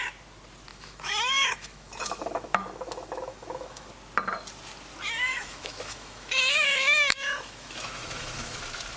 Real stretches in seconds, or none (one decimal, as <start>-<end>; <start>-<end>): 0.0-0.7; 3.9-5.3; 8.6-9.0